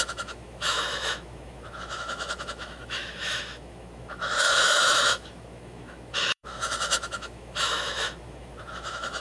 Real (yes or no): no